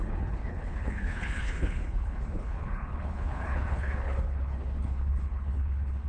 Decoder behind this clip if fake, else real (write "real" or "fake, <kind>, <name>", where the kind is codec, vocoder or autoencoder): fake, codec, HILCodec